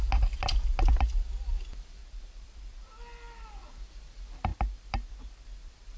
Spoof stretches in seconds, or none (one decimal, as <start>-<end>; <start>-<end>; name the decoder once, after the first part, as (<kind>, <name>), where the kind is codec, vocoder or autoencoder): 2.0-3.0 (vocoder, BigVGAN v2); 4.5-6.0